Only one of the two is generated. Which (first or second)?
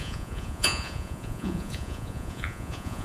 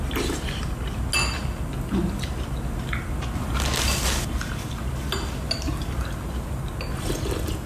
first